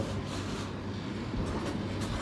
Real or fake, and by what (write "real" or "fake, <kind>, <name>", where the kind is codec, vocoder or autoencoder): real